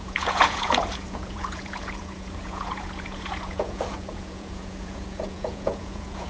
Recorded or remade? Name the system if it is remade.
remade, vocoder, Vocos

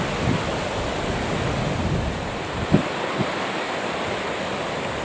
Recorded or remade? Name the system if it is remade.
recorded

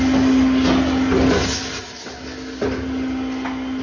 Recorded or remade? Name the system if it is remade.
recorded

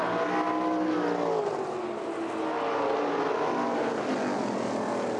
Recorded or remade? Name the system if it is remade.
recorded